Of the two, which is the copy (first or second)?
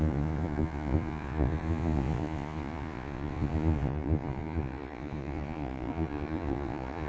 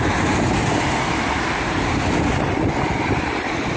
first